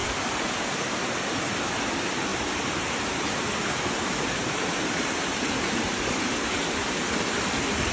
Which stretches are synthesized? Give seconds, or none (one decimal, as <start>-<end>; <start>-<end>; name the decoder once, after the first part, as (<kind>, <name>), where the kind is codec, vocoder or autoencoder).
0.0-1.7 (vocoder, BigVGAN v2); 2.3-7.0